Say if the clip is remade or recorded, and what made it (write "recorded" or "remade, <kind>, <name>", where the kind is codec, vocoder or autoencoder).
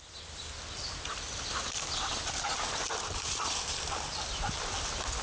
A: remade, vocoder, BigVGAN v2